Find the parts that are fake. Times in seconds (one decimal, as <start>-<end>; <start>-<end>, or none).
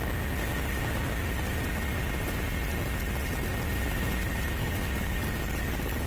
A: 4.6-6.1